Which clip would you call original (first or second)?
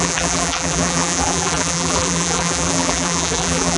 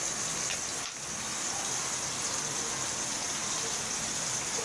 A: second